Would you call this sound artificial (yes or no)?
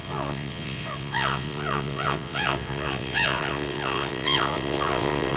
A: yes